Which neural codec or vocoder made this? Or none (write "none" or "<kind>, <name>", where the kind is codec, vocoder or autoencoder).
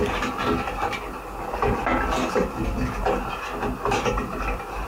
none